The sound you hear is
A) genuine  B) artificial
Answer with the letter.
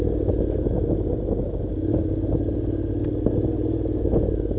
A